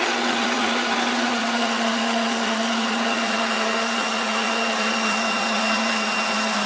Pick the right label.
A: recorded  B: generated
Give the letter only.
B